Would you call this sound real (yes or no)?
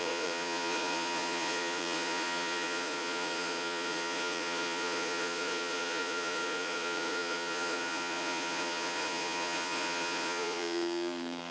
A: no